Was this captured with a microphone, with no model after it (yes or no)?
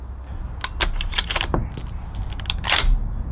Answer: yes